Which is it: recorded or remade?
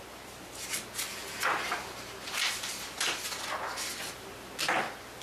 recorded